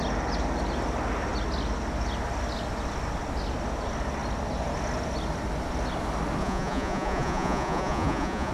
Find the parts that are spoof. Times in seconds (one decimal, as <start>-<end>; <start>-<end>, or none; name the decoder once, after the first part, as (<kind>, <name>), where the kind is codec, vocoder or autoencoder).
6.4-8.5 (vocoder, Vocos)